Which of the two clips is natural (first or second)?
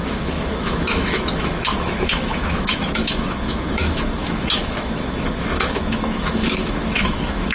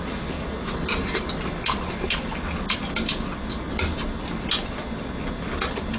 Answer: second